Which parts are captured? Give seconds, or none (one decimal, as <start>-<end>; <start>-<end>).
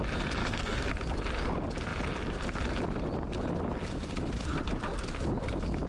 0.0-0.4; 0.9-5.9